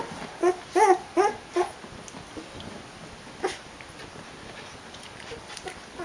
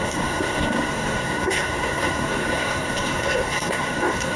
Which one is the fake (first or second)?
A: second